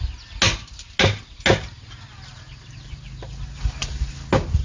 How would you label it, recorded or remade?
recorded